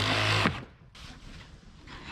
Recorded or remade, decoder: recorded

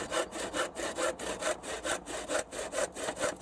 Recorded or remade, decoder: recorded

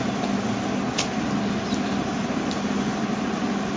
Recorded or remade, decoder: recorded